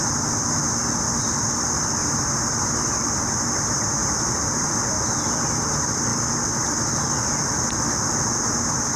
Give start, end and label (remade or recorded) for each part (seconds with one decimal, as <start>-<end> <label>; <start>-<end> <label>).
0.0-2.0 recorded; 2.0-2.8 remade; 2.8-4.0 recorded; 4.0-4.7 remade; 4.7-9.0 recorded